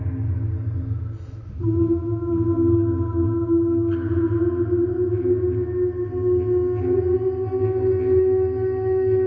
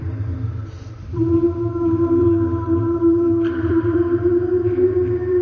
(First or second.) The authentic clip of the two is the first